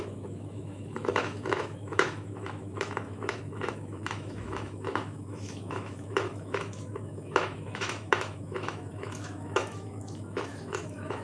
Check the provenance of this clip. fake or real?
fake